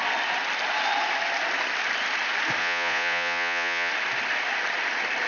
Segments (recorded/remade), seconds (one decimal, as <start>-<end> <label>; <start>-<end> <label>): 0.0-2.6 recorded; 2.6-3.9 remade; 3.9-5.3 recorded